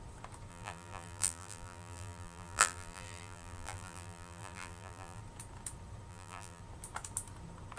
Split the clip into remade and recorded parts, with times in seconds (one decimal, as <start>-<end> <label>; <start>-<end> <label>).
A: 0.0-0.5 recorded; 0.5-5.2 remade; 5.2-6.1 recorded; 6.1-6.6 remade; 6.6-7.8 recorded